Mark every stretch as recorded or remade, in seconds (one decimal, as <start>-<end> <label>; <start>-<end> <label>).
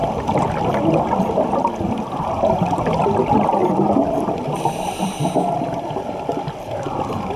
0.0-3.6 recorded; 3.6-6.6 remade; 6.6-7.4 recorded